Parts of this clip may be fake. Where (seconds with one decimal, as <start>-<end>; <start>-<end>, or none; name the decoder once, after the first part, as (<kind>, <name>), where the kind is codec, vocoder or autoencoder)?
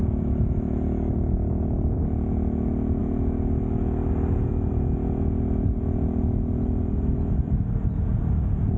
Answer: 0.0-1.6 (autoencoder, DAC-VAE)